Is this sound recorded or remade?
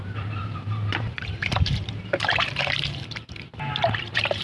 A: remade